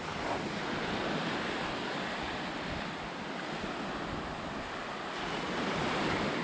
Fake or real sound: real